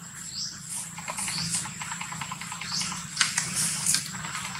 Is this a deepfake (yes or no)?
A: no